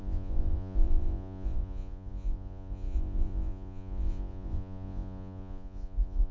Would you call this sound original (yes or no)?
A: no